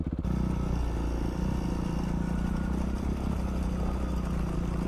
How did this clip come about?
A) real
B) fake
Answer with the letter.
A